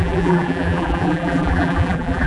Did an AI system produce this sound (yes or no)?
yes